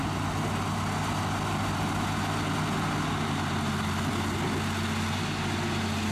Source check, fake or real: real